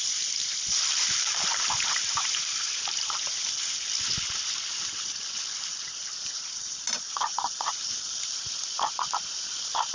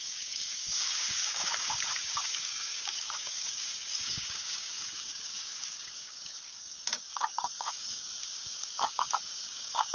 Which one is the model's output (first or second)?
second